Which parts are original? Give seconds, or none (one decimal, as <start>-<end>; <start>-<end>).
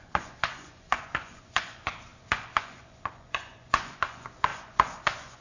none